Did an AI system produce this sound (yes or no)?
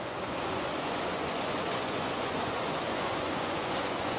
yes